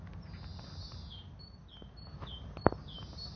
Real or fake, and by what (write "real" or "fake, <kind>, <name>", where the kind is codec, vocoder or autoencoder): real